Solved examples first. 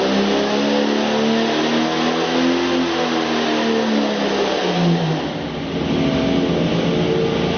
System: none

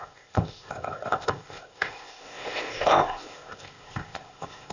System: codec, ZipCodec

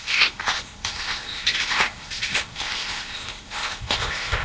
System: codec, ZipCodec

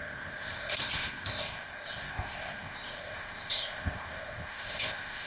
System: codec, ZipCodec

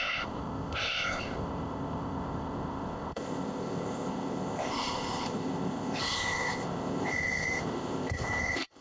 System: codec, ZipCodec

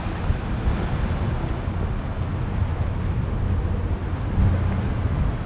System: none